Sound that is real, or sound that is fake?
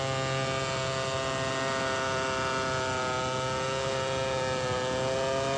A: real